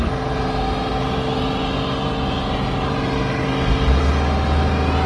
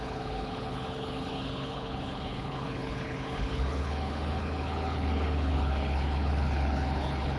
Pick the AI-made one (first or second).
second